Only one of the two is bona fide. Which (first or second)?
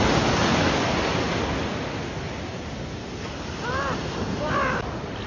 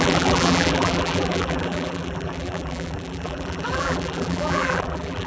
first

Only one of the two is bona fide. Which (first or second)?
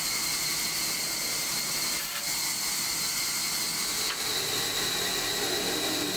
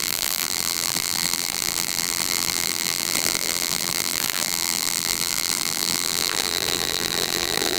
first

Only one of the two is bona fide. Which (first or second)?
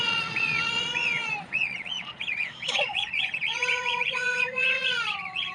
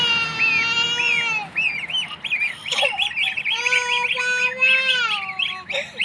second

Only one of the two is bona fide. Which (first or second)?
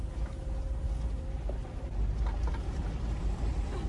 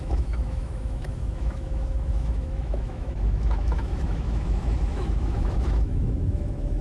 first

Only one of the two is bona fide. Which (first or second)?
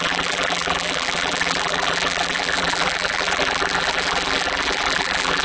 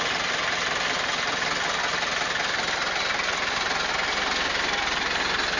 second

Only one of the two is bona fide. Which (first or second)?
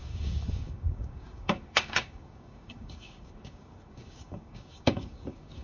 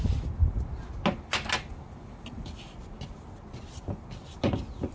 second